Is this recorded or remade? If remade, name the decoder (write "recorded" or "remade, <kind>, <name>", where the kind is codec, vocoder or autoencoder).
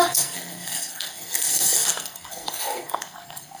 remade, codec, SNAC